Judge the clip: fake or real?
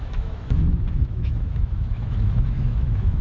fake